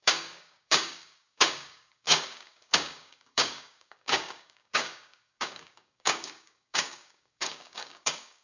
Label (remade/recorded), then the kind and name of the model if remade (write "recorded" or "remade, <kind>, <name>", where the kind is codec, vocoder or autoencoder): remade, codec, DAC